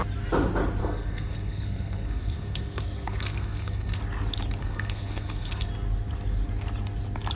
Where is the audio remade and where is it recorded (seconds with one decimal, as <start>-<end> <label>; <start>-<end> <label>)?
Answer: 0.0-0.8 recorded; 0.8-4.0 remade; 4.0-4.6 recorded; 4.6-5.7 remade; 5.7-7.4 recorded